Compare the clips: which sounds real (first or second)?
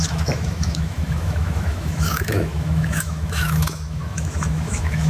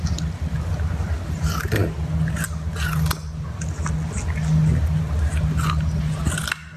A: second